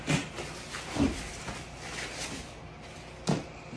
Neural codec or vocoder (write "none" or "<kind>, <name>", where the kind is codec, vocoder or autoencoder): none